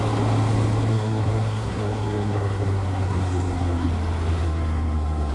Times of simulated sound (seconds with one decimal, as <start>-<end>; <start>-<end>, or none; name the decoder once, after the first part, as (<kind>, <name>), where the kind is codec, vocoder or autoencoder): 0.9-3.9 (codec, SNAC); 4.3-5.3